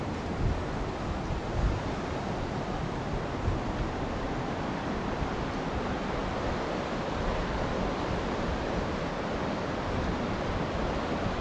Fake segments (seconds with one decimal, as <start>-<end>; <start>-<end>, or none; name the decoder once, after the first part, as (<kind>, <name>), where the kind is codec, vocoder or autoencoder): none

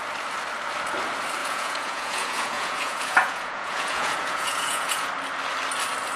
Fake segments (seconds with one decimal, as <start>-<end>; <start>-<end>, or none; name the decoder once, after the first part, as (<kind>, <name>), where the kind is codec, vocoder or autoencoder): 1.4-5.1 (vocoder, Vocos)

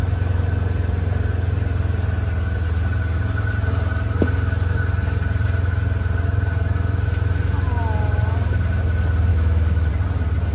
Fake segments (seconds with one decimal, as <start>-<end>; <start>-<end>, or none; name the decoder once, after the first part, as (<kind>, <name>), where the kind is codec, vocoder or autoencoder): 9.3-9.9 (autoencoder, DAC-VAE)